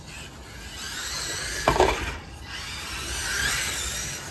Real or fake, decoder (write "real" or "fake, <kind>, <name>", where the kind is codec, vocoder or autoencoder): real